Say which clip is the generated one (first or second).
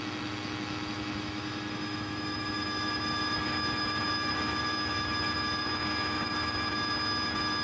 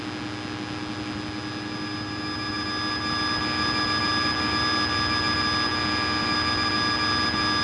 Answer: first